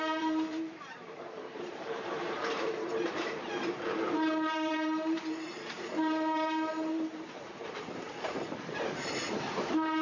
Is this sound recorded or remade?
remade